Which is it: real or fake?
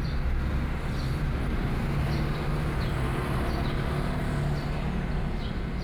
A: real